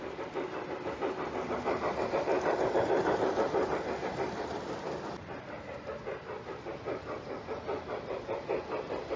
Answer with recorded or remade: recorded